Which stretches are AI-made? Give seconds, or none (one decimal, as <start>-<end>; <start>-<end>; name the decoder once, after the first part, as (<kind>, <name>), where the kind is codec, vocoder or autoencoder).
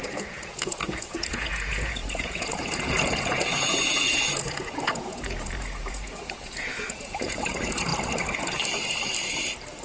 0.0-7.9 (vocoder, Vocos)